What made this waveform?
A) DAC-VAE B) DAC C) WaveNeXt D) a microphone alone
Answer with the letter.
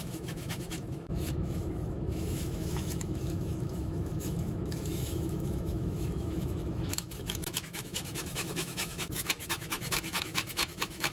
A